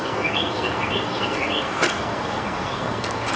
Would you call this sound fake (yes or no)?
yes